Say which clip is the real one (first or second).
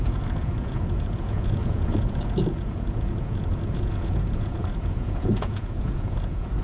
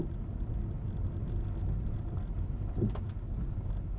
second